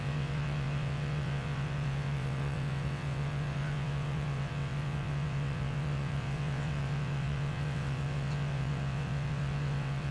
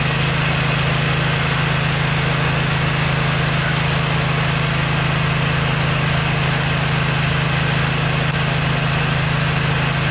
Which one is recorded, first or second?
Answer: second